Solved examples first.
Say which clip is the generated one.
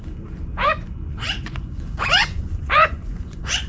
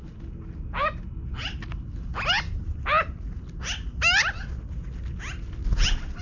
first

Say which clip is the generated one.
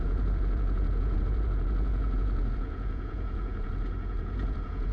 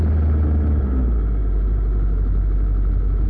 first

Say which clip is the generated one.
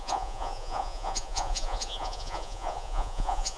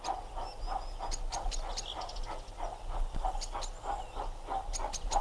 first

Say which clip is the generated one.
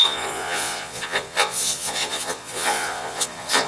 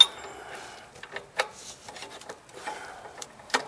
first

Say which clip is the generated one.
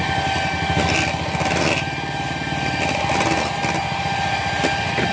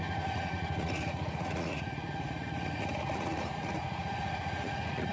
second